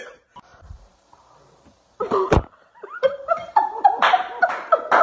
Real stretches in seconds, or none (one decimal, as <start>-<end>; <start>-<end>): 0.0-0.5; 3.5-5.0